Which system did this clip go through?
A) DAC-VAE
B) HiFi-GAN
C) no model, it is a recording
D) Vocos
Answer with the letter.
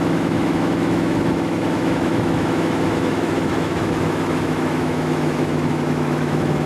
A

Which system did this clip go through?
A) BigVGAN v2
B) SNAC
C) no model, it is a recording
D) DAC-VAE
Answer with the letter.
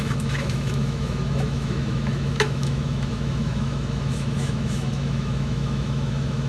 D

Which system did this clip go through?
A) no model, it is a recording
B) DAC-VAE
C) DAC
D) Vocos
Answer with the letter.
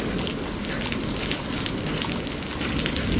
A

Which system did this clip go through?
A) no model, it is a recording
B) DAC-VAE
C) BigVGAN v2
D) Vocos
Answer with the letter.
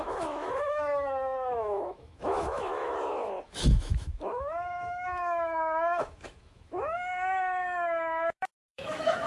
B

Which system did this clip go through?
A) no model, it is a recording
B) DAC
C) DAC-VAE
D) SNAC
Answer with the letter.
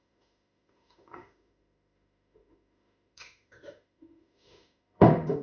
C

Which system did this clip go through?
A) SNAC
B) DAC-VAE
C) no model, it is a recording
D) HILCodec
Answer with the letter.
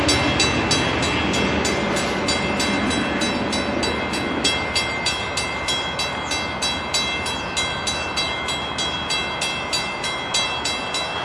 C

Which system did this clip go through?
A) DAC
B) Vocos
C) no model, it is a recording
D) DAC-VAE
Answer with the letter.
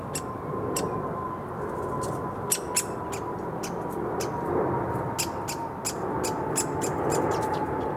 C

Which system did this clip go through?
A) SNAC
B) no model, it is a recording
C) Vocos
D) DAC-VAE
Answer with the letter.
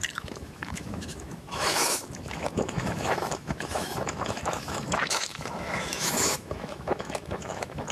D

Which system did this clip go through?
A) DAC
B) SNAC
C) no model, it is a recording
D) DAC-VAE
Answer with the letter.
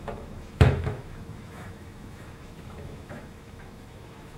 D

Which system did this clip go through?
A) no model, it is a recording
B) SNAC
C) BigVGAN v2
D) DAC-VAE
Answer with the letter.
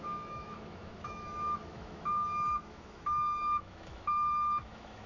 D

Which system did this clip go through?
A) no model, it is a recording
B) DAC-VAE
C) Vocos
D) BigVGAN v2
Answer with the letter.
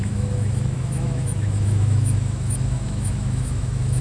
B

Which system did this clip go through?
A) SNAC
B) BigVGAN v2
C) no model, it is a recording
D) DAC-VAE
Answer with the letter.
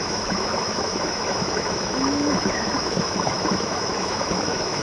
D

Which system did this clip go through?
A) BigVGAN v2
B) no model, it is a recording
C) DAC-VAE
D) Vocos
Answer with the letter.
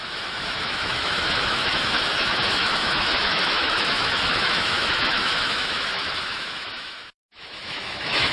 C